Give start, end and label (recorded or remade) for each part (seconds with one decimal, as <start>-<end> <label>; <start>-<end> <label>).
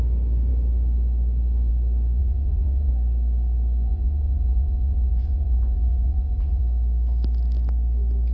0.0-2.2 recorded; 2.2-2.9 remade; 2.9-3.9 recorded; 3.9-6.6 remade; 6.6-8.3 recorded